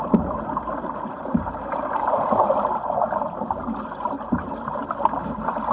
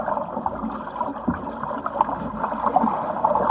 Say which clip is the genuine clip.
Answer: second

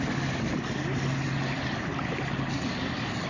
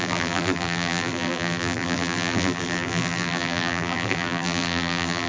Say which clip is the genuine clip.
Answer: first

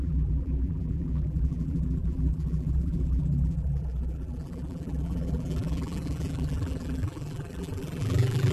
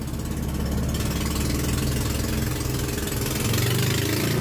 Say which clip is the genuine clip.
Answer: second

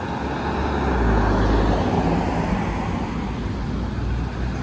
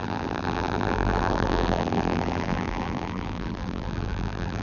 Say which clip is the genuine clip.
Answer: first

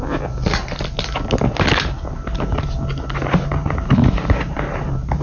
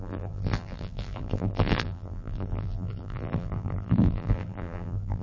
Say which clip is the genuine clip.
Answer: first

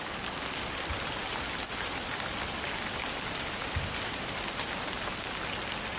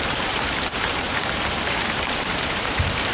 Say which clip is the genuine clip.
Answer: first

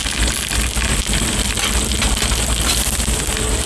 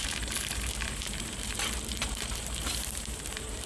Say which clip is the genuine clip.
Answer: first